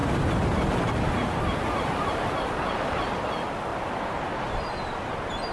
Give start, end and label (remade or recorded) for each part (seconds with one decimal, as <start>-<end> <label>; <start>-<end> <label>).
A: 0.0-3.1 remade; 3.1-3.7 recorded; 3.7-4.2 remade; 4.2-5.5 recorded